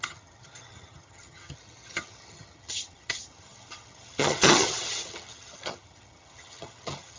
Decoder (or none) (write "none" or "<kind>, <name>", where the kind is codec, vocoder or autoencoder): vocoder, HiFi-GAN